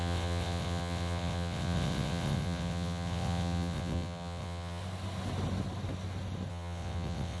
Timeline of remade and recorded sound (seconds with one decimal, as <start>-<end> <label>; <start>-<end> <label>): 0.0-4.8 remade; 4.8-6.5 recorded; 6.5-7.4 remade